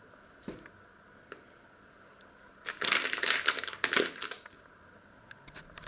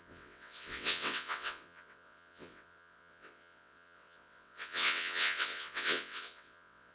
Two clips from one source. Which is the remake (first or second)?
second